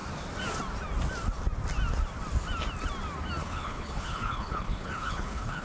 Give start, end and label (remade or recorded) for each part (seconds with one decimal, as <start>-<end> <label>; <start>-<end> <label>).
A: 0.0-3.4 recorded; 3.4-5.6 remade